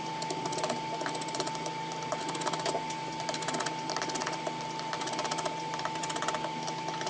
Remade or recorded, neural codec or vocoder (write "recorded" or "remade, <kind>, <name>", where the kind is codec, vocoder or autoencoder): recorded